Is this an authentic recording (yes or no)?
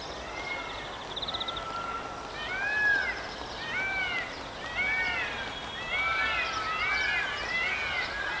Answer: yes